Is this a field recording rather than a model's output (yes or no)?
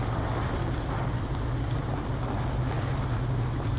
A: yes